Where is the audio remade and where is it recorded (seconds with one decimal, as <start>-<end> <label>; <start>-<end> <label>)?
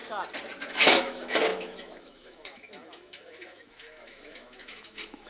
0.0-0.7 recorded; 0.7-5.3 remade